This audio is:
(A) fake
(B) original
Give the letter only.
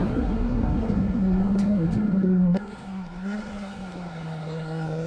A